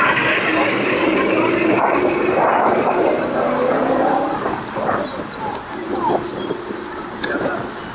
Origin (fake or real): fake